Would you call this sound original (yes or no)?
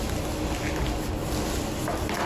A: yes